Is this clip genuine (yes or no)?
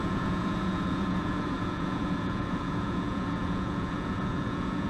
no